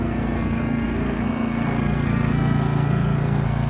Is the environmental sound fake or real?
fake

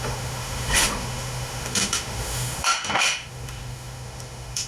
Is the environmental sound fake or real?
fake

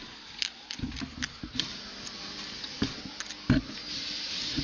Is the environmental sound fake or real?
real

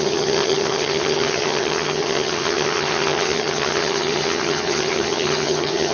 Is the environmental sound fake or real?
fake